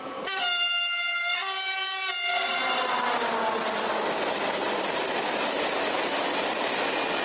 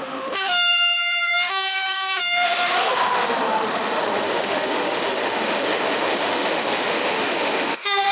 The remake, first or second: second